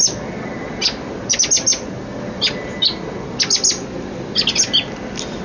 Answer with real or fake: real